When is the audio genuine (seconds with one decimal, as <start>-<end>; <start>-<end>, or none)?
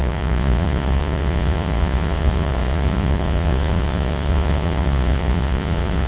none